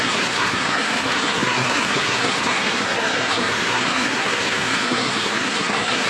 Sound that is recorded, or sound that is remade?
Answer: remade